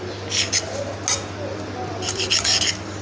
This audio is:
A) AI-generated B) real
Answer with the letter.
B